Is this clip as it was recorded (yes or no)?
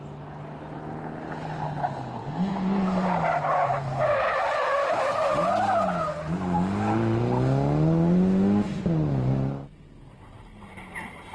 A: yes